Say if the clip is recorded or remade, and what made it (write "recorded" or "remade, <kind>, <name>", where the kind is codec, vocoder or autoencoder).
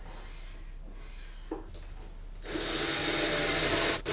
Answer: recorded